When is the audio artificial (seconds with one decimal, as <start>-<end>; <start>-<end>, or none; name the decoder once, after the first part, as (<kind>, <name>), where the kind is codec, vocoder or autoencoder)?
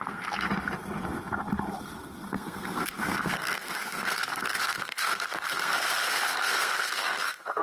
0.0-0.5 (codec, SNAC); 2.3-7.6